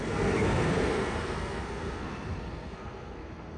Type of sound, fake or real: fake